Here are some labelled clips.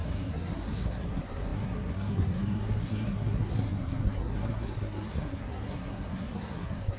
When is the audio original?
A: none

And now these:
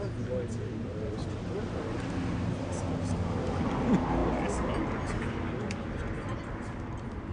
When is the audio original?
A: 0.0-7.3

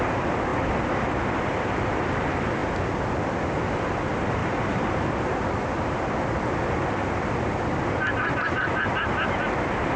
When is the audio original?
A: 0.0-4.4; 5.8-10.0

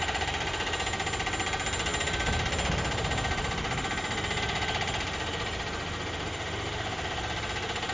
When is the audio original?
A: 0.0-7.9

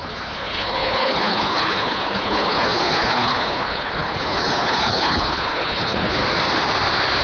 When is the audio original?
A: 6.2-7.2

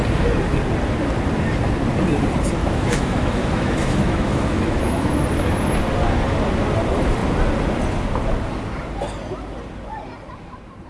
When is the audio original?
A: 0.0-2.6; 5.1-10.9

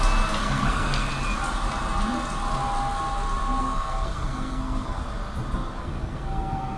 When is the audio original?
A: 0.0-0.4; 1.1-3.6; 5.0-5.8